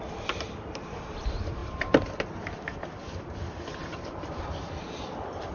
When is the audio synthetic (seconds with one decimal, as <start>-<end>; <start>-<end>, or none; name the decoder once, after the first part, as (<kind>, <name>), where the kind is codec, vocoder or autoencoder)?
1.6-4.9 (vocoder, BigVGAN v2)